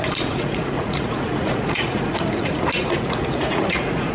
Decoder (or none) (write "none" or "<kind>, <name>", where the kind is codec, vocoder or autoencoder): vocoder, Vocos